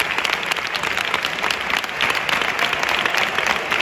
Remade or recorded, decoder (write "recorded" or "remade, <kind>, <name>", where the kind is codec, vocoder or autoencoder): recorded